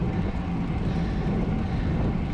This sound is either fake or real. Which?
real